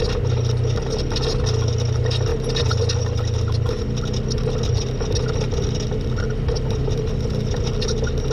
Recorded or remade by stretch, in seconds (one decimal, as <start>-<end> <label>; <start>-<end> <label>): 0.0-8.3 recorded